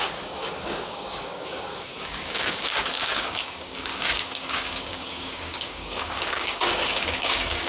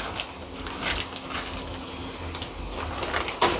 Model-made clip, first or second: first